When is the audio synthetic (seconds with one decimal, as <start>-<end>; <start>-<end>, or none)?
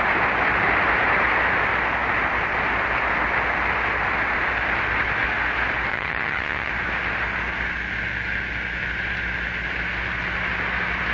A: 5.9-6.7